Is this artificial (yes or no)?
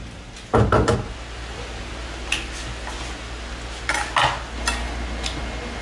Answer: no